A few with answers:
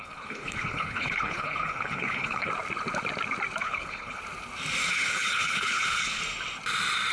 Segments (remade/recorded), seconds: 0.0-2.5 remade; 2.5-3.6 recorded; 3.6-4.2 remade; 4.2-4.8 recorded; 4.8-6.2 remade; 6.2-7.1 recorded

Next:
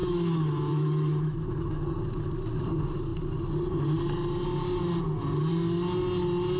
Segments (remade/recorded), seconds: 0.0-2.0 remade; 2.0-6.6 recorded